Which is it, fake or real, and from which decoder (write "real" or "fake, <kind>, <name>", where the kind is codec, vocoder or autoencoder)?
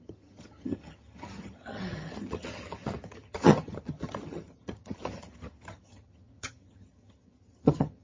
fake, vocoder, HiFi-GAN